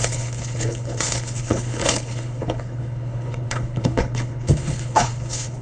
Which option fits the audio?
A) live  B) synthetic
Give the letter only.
B